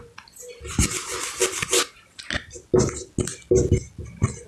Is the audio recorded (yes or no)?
yes